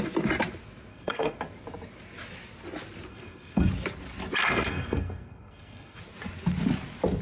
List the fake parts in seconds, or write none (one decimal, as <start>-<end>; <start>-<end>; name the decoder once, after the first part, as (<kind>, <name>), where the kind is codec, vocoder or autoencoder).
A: 0.9-1.4 (codec, SNAC); 3.1-3.7; 4.4-6.0